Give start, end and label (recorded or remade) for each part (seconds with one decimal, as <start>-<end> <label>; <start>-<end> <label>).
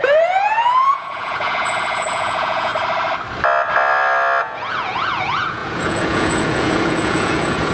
0.0-2.7 remade; 2.7-4.4 recorded; 4.4-7.7 remade